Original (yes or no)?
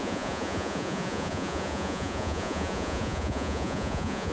no